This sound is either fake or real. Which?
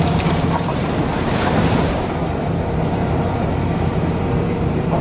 fake